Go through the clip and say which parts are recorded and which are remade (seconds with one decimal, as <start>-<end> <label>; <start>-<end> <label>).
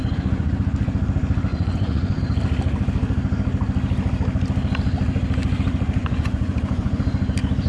0.0-0.5 remade; 0.5-1.5 recorded; 1.5-2.2 remade; 2.2-6.0 recorded; 6.0-7.0 remade; 7.0-7.7 recorded